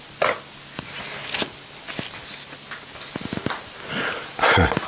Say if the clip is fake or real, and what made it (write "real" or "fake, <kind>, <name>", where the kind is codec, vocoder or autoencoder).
real